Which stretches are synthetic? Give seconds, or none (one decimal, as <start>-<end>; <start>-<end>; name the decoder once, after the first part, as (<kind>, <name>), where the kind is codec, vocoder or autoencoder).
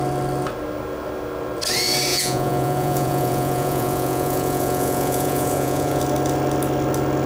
2.1-6.0 (vocoder, Vocos)